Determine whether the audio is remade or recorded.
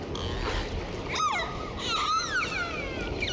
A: recorded